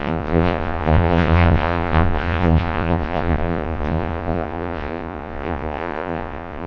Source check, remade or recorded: remade